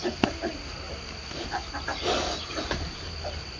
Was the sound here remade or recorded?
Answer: recorded